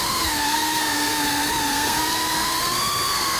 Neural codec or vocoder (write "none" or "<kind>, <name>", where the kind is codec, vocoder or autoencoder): codec, SNAC